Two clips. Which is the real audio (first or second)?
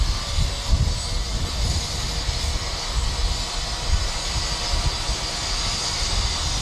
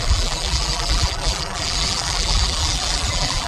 first